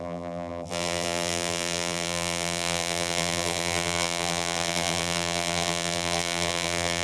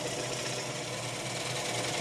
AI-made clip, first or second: first